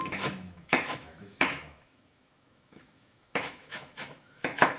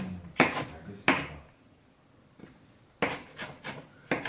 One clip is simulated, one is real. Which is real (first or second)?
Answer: second